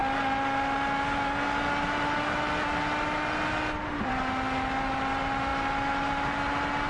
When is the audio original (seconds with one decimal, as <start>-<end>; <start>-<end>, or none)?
0.0-6.9